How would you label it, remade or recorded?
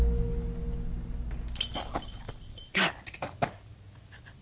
recorded